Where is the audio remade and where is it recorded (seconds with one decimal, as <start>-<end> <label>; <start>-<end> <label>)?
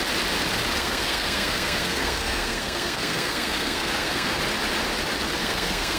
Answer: 0.0-0.8 recorded; 0.8-4.4 remade; 4.4-5.4 recorded; 5.4-6.0 remade